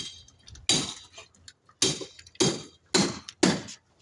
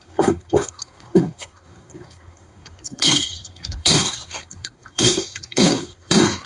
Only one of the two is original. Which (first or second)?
first